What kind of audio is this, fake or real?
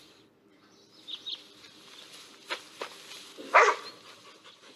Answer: real